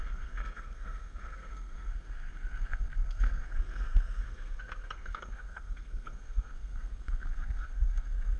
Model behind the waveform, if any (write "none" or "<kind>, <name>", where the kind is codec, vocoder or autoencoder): codec, SNAC